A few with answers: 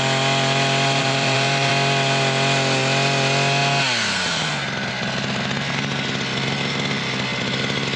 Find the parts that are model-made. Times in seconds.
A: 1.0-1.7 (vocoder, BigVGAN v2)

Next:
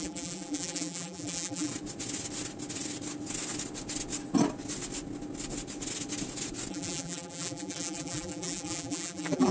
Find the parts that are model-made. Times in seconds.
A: 0.0-1.7 (vocoder, BigVGAN v2); 6.7-9.5

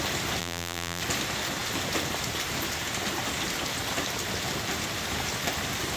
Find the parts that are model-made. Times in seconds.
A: 0.4-1.0 (vocoder, BigVGAN v2)

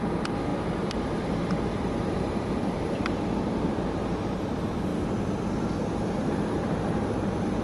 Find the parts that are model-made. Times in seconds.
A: 0.0-4.9 (vocoder, BigVGAN v2); 6.0-7.6

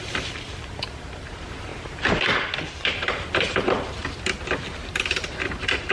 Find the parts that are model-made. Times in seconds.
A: 0.0-4.0 (vocoder, BigVGAN v2); 4.9-5.9

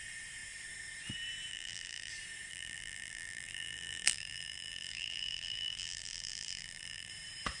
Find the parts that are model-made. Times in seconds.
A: 1.5-2.1 (vocoder, BigVGAN v2); 2.5-7.1

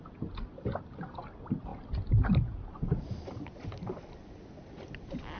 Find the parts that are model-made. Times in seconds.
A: 1.7-2.7 (vocoder, BigVGAN v2)